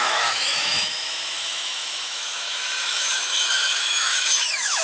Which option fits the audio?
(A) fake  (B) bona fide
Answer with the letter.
A